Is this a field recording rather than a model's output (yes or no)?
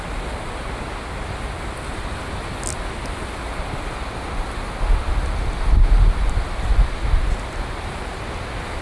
yes